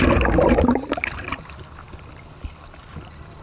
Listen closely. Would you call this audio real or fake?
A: real